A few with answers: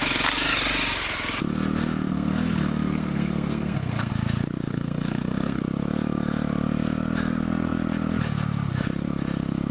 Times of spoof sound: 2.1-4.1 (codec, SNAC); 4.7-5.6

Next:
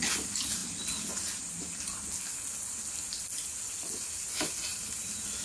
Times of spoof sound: 4.7-5.4 (vocoder, BigVGAN v2)